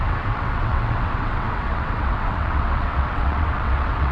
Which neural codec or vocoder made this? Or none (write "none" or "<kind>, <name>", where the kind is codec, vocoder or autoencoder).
vocoder, WaveNeXt